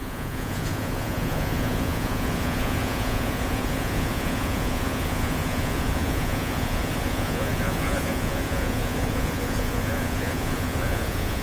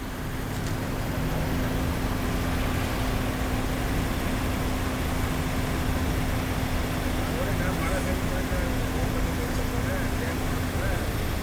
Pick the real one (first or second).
second